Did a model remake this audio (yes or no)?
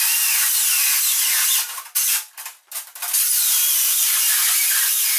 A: no